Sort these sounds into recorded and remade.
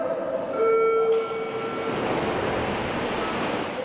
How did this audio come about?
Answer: recorded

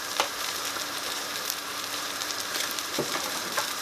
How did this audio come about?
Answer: remade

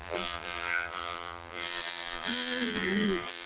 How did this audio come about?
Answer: remade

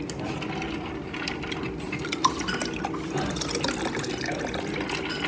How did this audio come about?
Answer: recorded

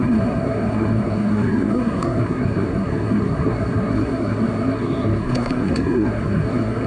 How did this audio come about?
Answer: remade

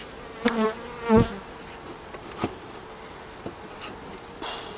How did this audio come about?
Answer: recorded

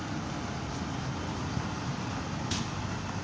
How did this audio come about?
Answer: recorded